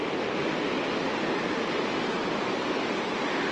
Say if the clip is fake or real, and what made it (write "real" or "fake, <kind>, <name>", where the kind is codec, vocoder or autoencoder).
real